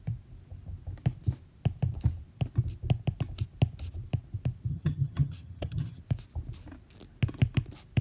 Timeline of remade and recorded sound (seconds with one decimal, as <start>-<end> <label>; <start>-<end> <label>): 0.0-4.7 recorded; 4.7-6.0 remade; 6.0-8.0 recorded